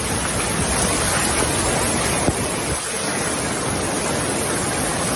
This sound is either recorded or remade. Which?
recorded